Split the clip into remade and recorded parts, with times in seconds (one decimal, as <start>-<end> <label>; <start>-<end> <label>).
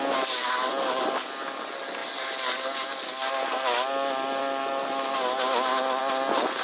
0.0-6.6 recorded